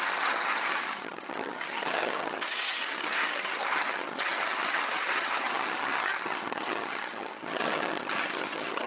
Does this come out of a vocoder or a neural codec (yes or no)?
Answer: yes